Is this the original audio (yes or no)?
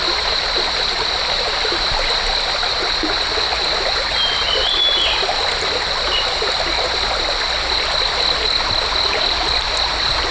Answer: yes